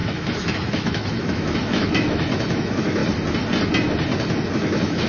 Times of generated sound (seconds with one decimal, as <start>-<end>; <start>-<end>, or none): 0.0-3.0; 4.5-5.1